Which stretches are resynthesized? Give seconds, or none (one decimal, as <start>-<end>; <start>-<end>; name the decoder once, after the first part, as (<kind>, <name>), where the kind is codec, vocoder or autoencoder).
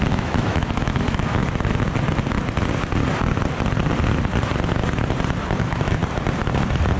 0.0-1.4 (autoencoder, DAC-VAE); 5.6-6.0